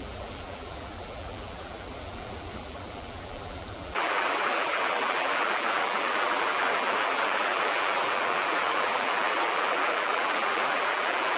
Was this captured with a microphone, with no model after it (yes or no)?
no